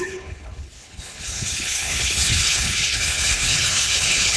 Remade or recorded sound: remade